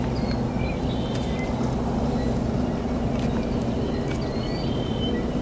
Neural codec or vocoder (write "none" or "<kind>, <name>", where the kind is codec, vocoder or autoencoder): none